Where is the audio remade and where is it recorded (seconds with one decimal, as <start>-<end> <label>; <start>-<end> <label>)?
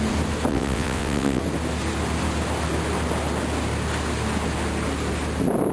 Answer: 0.0-0.5 recorded; 0.5-1.4 remade; 1.4-5.7 recorded